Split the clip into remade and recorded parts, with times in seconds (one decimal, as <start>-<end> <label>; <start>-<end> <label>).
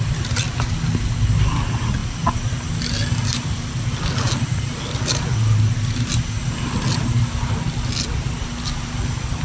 0.0-9.4 recorded